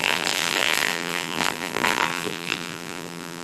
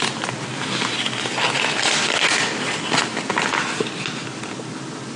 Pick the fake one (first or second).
first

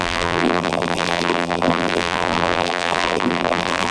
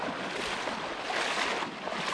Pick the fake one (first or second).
first